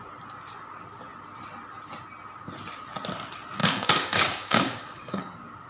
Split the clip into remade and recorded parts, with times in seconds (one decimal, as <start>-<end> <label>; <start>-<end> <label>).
0.0-3.6 recorded; 3.6-5.2 remade; 5.2-5.7 recorded